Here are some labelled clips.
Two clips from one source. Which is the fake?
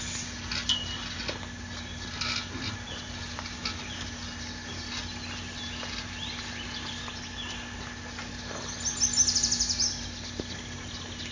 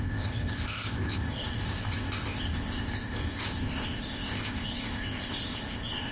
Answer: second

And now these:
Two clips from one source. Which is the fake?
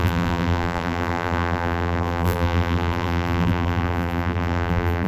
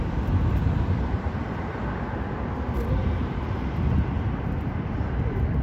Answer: first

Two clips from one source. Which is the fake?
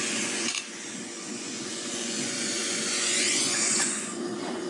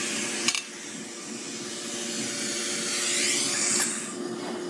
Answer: first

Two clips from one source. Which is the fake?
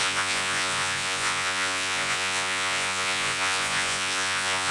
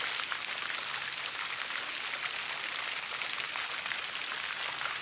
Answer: first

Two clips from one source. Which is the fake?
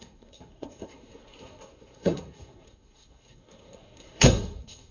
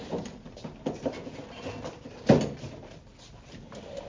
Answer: first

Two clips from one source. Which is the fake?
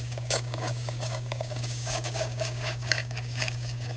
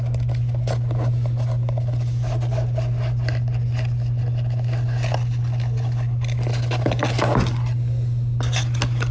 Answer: first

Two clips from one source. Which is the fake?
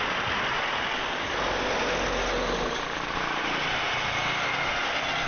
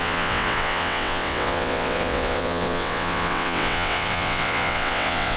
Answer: second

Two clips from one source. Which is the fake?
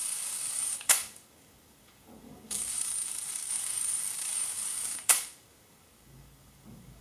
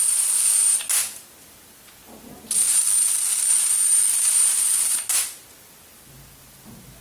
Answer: first